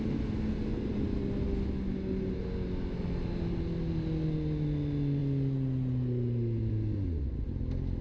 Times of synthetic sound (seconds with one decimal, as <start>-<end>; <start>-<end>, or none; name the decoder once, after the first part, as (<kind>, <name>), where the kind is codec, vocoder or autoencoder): none